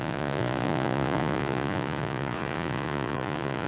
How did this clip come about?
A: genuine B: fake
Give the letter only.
B